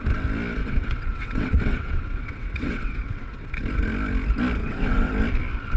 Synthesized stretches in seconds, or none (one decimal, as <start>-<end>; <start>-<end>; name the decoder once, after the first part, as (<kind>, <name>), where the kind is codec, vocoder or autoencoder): 0.6-3.4 (vocoder, WaveNeXt); 4.6-5.1